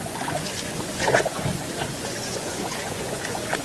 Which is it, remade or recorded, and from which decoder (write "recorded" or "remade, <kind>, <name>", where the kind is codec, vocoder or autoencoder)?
remade, vocoder, Vocos